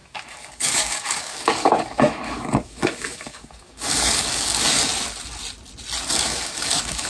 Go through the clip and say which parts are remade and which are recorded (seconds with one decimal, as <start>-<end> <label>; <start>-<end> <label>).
0.0-4.9 remade; 4.9-6.1 recorded; 6.1-7.1 remade